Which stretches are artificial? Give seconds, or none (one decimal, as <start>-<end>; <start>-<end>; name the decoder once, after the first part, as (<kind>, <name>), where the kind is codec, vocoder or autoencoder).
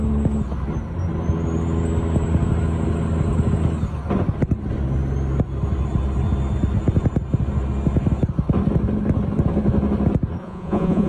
10.4-11.1 (vocoder, Vocos)